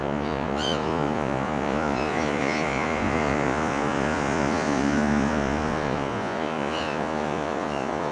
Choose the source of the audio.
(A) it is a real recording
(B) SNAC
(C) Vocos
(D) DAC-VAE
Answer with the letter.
C